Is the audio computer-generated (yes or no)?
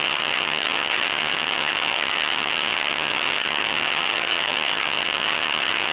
yes